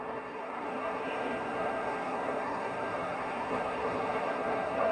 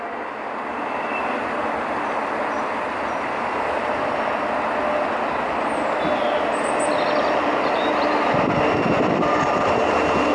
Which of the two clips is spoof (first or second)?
first